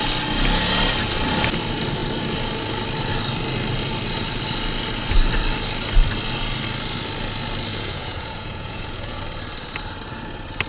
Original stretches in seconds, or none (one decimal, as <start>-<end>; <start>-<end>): 0.0-7.7; 9.2-10.7